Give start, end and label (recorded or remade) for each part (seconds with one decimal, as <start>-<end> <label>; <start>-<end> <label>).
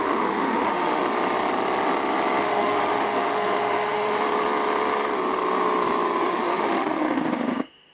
0.0-1.0 remade; 1.0-2.4 recorded; 2.4-4.2 remade; 4.2-6.3 recorded; 6.3-7.9 remade